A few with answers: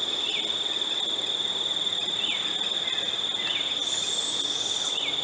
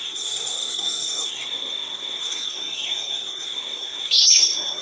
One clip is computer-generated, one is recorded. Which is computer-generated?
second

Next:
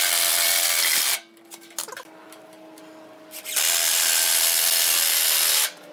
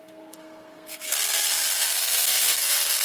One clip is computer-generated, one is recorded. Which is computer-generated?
second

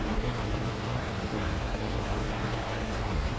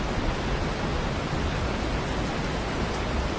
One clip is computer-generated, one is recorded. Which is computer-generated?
first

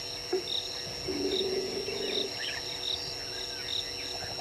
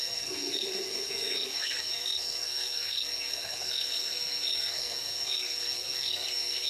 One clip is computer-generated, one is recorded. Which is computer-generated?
second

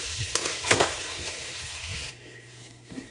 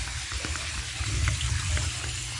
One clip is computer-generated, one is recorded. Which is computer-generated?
first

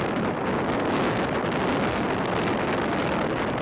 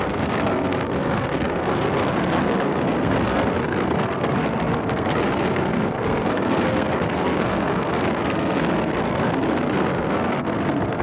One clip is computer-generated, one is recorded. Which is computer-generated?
second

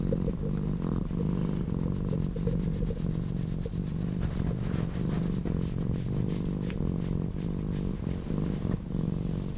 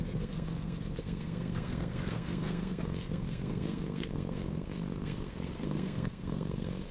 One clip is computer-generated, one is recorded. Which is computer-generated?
second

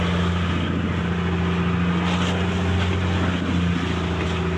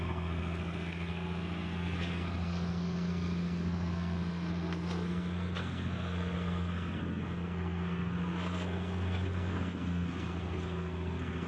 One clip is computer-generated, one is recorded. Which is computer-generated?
second